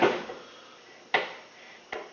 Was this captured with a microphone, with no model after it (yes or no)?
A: yes